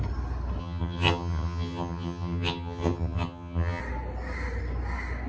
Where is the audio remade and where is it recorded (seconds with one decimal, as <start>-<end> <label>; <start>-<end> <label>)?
0.0-0.6 recorded; 0.6-3.8 remade; 3.8-5.3 recorded